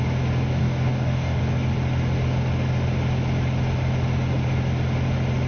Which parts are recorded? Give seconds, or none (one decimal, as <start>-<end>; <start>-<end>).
0.0-0.6; 1.4-5.5